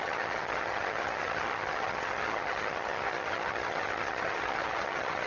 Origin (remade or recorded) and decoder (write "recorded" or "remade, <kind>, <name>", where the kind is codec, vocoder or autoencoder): remade, vocoder, HiFi-GAN